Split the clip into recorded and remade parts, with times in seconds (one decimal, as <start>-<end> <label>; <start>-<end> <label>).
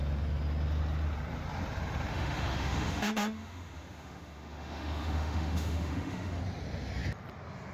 0.0-2.1 recorded; 2.1-6.4 remade; 6.4-7.7 recorded